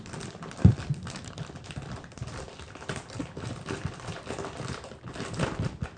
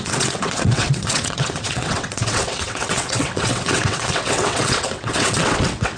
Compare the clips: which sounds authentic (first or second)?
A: first